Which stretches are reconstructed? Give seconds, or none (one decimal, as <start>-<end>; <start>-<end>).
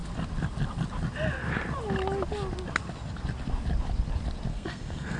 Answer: 4.5-5.2